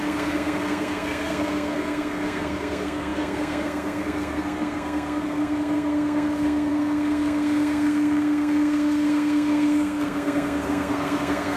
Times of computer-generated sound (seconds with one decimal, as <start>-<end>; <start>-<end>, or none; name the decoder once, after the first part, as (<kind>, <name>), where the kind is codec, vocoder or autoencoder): 0.0-11.6 (codec, SNAC)